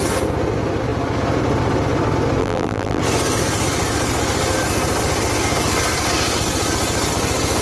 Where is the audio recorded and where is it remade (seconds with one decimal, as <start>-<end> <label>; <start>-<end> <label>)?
0.0-2.4 recorded; 2.4-3.0 remade; 3.0-7.6 recorded